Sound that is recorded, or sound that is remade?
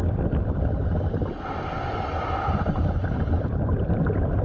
remade